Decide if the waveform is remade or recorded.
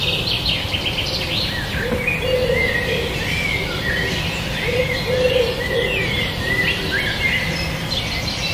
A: recorded